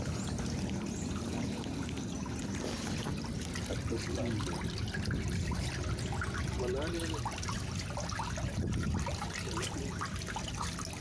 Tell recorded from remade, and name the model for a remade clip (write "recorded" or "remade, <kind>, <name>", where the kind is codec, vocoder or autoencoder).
recorded